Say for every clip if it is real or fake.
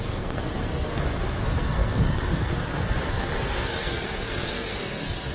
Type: fake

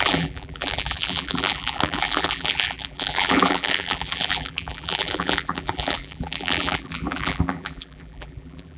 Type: fake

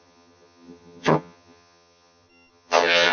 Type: fake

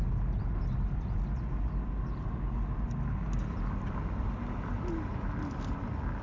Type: real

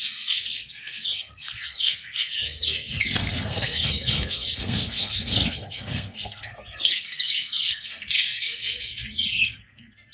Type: fake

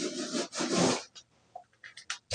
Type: real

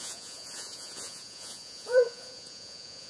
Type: fake